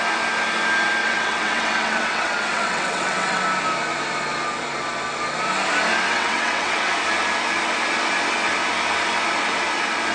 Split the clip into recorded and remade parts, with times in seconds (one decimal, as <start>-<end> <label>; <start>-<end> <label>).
0.0-1.0 recorded; 1.0-3.4 remade; 3.4-6.1 recorded; 6.1-6.9 remade; 6.9-10.1 recorded